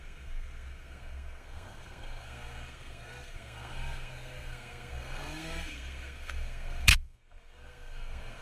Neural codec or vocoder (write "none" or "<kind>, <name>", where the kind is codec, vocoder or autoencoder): codec, SNAC